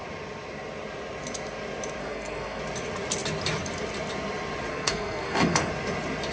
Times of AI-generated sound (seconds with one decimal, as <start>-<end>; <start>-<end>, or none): 2.0-2.6; 4.7-5.7